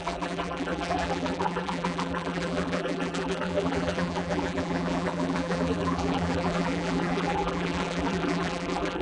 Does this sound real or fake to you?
fake